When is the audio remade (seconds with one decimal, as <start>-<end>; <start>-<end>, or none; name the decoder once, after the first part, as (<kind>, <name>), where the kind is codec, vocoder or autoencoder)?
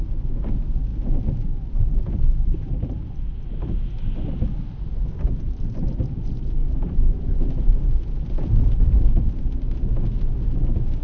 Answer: 0.0-11.0 (vocoder, BigVGAN v2)